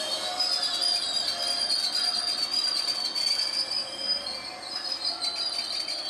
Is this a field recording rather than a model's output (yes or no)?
no